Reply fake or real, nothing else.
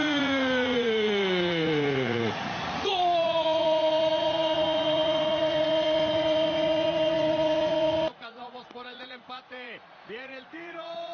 fake